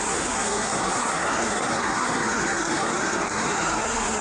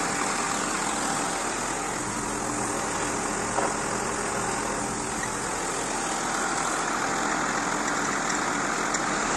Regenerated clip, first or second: first